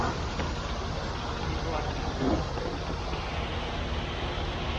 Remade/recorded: recorded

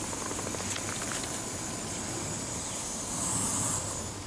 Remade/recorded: recorded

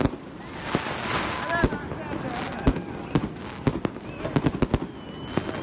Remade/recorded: recorded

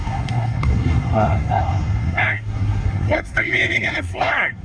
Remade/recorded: remade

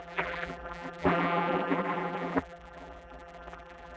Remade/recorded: remade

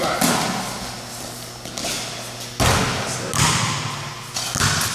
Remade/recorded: recorded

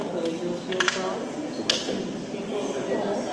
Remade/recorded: recorded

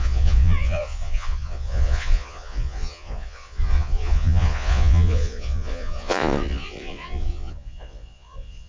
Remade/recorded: remade